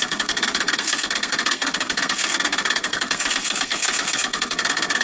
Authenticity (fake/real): fake